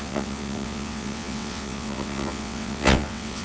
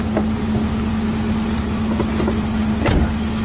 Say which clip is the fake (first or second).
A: first